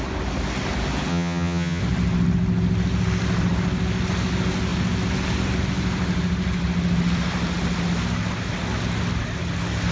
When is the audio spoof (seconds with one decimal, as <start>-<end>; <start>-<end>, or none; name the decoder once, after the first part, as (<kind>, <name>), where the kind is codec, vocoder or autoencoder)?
1.1-1.8 (vocoder, HiFi-GAN)